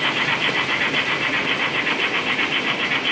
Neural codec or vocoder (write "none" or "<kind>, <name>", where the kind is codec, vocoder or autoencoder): none